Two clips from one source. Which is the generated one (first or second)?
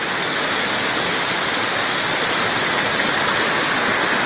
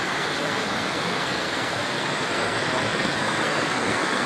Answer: second